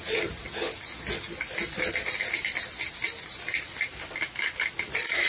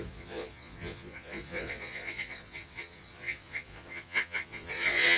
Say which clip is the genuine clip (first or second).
first